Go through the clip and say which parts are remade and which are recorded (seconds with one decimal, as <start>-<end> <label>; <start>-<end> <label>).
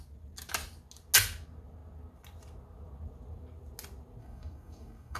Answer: 0.0-4.2 recorded; 4.2-5.2 remade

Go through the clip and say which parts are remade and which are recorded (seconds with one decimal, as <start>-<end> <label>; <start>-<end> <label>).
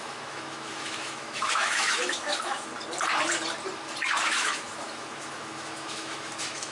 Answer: 0.0-2.7 remade; 2.7-4.1 recorded; 4.1-6.7 remade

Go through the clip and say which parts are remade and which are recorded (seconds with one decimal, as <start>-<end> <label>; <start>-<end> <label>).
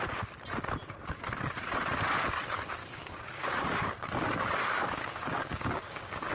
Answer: 0.0-2.8 recorded; 2.8-6.3 remade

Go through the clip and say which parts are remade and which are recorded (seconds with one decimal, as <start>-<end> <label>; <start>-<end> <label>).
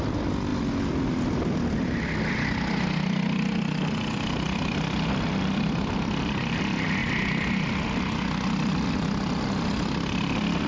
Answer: 0.0-10.7 recorded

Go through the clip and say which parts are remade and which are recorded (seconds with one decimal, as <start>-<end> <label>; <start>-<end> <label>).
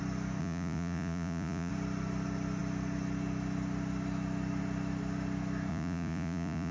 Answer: 0.0-0.4 recorded; 0.4-1.7 remade; 1.7-5.7 recorded; 5.7-6.7 remade